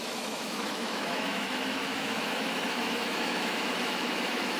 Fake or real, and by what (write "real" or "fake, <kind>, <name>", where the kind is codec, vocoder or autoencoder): fake, autoencoder, DAC-VAE